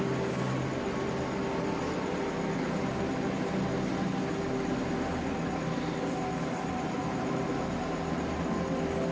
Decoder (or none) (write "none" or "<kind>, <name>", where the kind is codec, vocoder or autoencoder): none